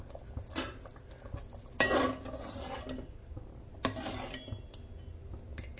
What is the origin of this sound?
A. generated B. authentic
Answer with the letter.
B